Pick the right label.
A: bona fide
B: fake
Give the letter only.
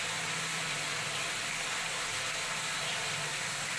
A